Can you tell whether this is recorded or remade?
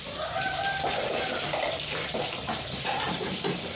remade